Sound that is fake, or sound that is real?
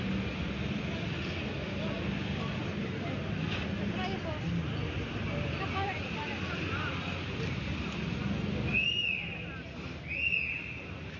real